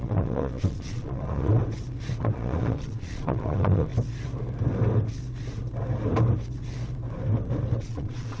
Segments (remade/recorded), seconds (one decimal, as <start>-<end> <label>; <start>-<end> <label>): 0.0-1.6 remade; 1.6-2.2 recorded; 2.2-3.9 remade; 3.9-7.8 recorded; 7.8-8.4 remade

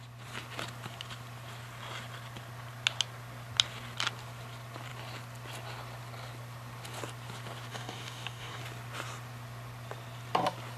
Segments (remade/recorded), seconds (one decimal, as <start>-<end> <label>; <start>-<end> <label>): 0.0-7.7 recorded; 7.7-8.6 remade; 8.6-10.8 recorded